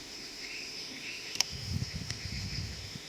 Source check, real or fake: fake